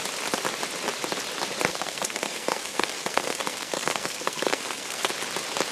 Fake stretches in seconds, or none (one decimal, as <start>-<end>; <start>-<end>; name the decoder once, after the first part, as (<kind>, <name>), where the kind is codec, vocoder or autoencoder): 1.7-5.1 (codec, SNAC)